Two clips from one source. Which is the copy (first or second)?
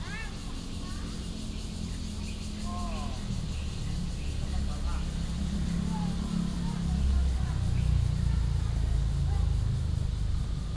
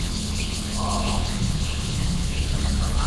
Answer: second